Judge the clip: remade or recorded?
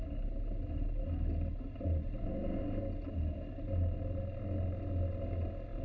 recorded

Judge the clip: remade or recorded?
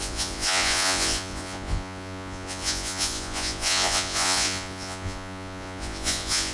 remade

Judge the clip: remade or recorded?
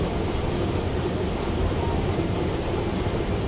recorded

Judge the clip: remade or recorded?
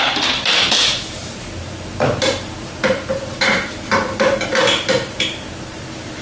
remade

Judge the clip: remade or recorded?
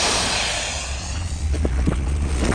remade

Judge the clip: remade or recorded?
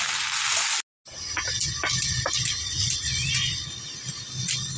recorded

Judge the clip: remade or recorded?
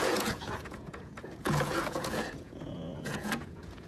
remade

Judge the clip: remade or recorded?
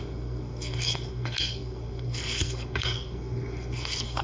remade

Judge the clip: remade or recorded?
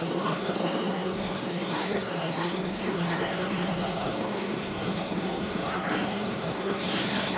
remade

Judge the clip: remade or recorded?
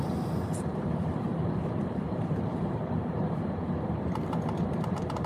remade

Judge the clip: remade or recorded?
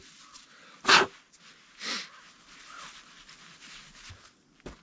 recorded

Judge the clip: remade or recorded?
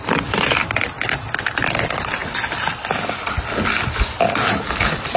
recorded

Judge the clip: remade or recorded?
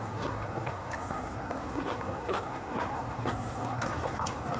remade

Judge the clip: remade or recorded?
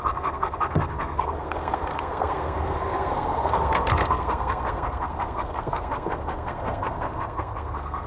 remade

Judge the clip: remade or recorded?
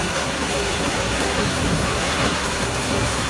remade